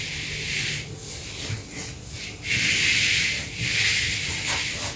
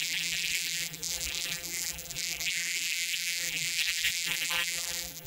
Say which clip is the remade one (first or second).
second